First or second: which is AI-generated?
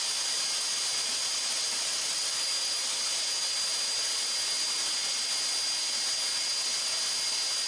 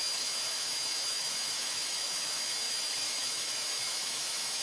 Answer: second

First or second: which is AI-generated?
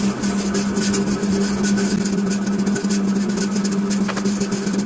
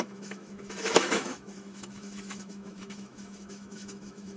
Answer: second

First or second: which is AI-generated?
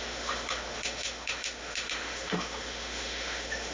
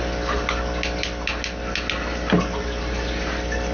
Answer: first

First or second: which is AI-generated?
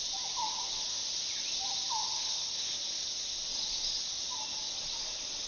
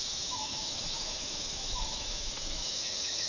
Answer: second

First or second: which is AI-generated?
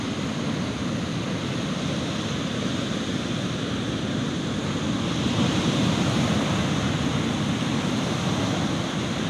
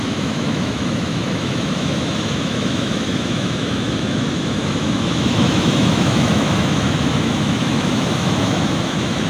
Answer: second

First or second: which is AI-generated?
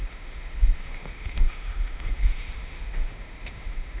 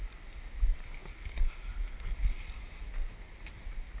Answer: first